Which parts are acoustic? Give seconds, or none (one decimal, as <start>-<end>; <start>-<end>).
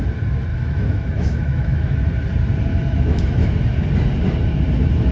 0.0-0.5; 2.0-2.7; 3.5-5.1